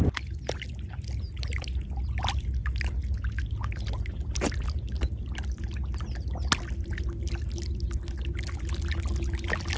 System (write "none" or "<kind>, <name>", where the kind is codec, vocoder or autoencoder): none